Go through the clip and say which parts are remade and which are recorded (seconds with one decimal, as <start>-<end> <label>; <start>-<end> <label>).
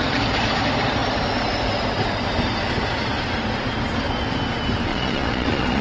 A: 0.0-4.9 recorded; 4.9-5.8 remade